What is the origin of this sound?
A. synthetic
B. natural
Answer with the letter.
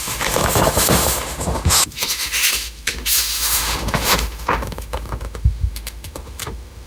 A